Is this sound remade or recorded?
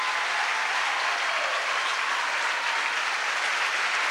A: recorded